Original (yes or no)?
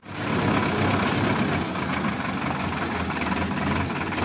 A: yes